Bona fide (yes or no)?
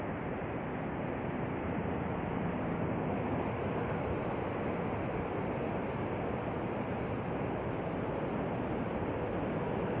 yes